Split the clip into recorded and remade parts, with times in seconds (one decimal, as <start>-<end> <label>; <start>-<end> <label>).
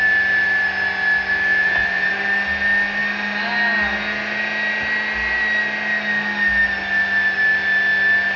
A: 0.0-1.5 recorded; 1.5-2.1 remade; 2.1-8.4 recorded